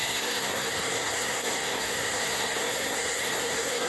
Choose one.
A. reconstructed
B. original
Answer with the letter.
A